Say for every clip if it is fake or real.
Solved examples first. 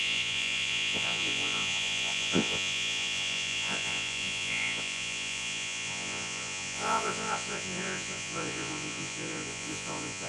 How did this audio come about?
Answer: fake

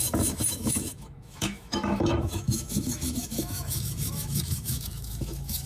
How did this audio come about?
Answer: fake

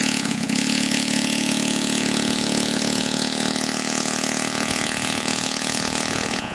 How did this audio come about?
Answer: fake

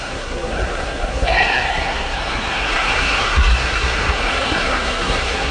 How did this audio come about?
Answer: fake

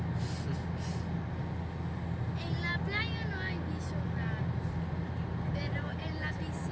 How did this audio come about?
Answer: real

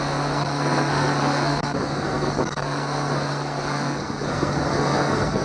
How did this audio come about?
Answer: fake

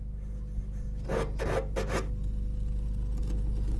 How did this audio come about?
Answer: real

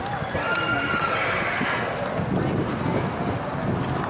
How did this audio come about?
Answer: real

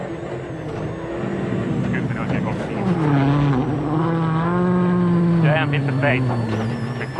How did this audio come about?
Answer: real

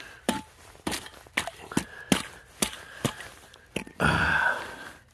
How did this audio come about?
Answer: real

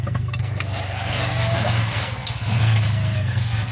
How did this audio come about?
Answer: fake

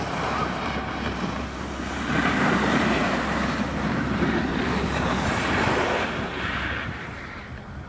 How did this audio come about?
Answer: fake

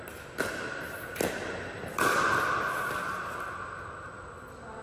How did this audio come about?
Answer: real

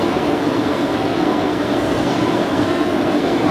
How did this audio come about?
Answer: fake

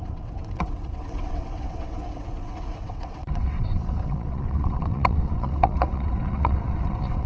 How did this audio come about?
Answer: fake